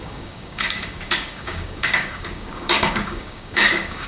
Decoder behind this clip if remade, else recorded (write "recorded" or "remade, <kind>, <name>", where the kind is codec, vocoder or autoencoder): remade, codec, DAC